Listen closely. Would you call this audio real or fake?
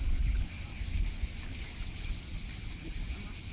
real